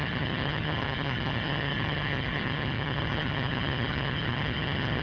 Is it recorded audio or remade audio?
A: remade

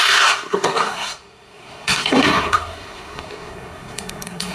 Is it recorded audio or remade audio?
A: remade